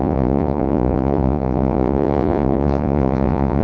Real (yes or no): no